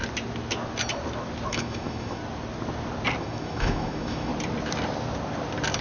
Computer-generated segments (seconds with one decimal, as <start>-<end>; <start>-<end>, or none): 1.5-2.2; 3.2-4.3